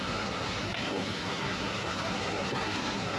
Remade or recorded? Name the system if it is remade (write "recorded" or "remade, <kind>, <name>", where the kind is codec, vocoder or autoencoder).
remade, codec, SNAC